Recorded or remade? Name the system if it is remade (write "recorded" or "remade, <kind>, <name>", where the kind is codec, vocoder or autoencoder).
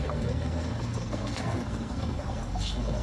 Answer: remade, codec, SNAC